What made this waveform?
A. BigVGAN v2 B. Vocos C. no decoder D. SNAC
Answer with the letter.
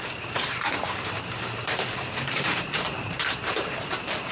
A